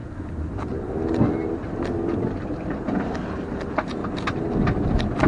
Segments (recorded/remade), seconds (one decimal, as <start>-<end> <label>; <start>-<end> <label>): 0.0-1.5 recorded; 1.5-4.0 remade; 4.0-5.3 recorded